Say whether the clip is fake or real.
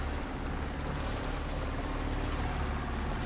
real